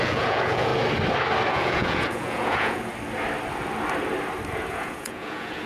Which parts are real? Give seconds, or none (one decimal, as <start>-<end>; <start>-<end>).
0.7-1.5; 2.9-4.7